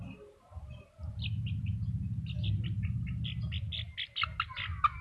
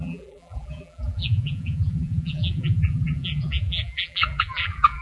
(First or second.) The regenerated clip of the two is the second